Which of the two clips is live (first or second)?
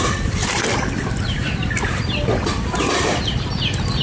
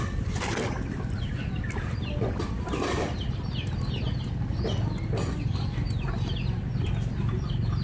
second